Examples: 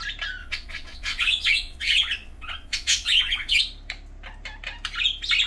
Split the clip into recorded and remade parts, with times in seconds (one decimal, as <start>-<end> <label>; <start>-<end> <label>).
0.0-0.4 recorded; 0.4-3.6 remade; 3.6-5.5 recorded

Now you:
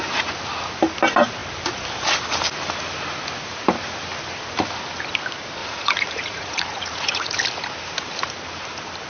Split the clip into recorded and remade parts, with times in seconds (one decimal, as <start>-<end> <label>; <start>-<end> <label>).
0.0-5.6 recorded; 5.6-7.4 remade; 7.4-9.1 recorded

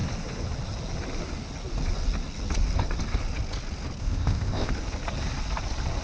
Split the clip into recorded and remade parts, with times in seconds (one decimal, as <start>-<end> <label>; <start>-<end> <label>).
0.0-4.0 recorded; 4.0-4.7 remade; 4.7-6.0 recorded

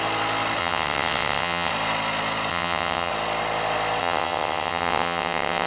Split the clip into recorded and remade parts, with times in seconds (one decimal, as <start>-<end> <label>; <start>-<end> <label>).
0.0-0.6 recorded; 0.6-1.7 remade; 1.7-2.5 recorded; 2.5-3.1 remade; 3.1-4.0 recorded; 4.0-5.7 remade

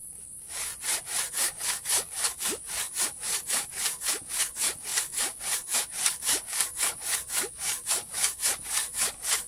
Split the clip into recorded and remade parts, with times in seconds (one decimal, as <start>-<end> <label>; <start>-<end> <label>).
0.0-0.7 remade; 0.7-1.3 recorded; 1.3-9.5 remade

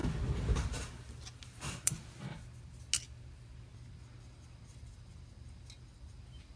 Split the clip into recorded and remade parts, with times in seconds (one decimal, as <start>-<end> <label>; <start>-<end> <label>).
0.0-6.6 recorded